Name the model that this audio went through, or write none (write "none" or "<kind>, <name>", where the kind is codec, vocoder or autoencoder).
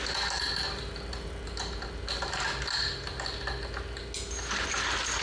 none